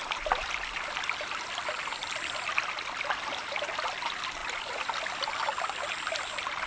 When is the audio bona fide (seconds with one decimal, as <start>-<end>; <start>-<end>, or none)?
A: 0.0-6.7